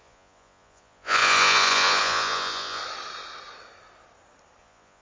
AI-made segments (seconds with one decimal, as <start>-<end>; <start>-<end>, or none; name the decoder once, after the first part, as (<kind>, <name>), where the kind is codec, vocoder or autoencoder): 0.0-2.8 (vocoder, Vocos); 4.6-5.0